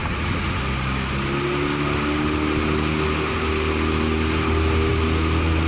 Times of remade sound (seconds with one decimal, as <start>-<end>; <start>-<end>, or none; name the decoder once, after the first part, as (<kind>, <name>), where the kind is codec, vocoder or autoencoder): 0.0-0.6 (vocoder, Vocos)